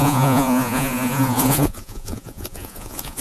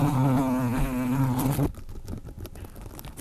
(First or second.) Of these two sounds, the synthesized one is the first